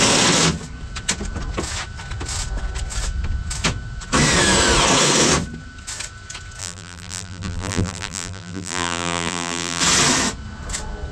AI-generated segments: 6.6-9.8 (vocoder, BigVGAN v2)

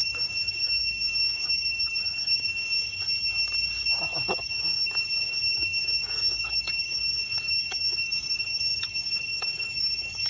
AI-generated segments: 0.0-3.0 (codec, DAC); 4.0-10.3

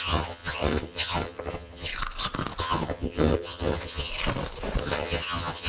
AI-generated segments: 0.0-1.9 (vocoder, HiFi-GAN); 2.6-4.1; 4.8-5.7

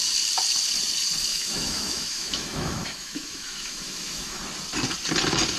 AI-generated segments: 1.3-4.4 (autoencoder, DAC-VAE)

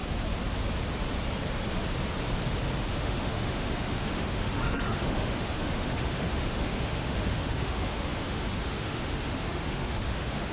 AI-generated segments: 2.8-10.5 (autoencoder, DAC-VAE)

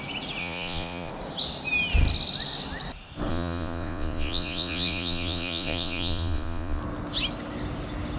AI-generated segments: 0.4-1.1 (vocoder, Vocos); 3.3-6.8

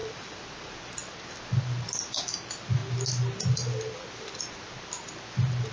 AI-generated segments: none